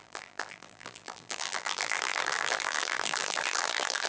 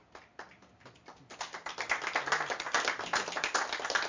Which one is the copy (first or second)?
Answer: first